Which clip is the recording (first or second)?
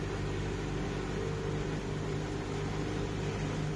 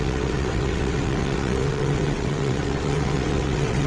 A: first